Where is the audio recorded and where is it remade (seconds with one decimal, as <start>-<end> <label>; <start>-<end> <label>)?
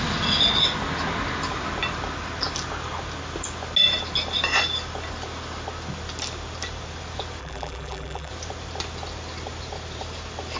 0.0-7.4 recorded; 7.4-8.3 remade; 8.3-10.6 recorded